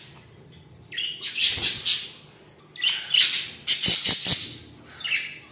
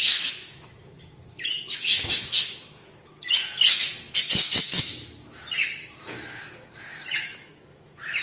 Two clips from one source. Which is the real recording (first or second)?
first